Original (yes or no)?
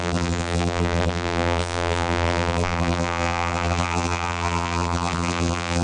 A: no